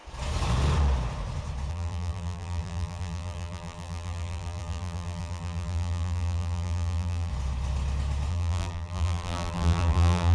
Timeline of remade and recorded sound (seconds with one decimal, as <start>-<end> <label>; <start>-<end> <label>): 0.0-1.7 recorded; 1.7-7.3 remade; 7.3-8.3 recorded; 8.3-10.3 remade